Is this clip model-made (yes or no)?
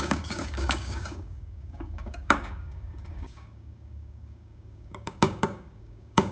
yes